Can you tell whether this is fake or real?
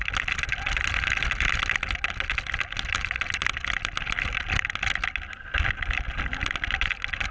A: real